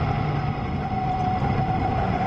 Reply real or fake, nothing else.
real